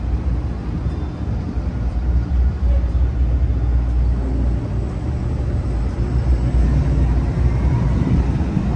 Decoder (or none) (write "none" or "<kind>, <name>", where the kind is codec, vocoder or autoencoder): none